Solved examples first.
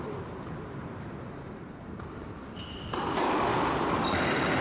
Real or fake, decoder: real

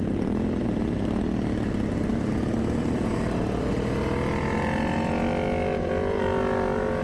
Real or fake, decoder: real